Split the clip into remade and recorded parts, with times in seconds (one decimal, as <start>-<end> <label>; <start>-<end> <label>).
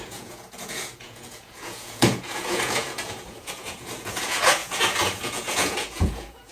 0.0-6.5 remade